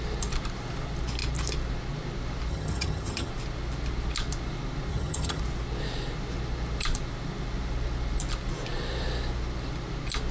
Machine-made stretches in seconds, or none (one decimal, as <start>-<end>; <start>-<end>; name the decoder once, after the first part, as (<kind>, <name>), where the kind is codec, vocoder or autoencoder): 2.5-3.3 (vocoder, HiFi-GAN); 4.9-5.4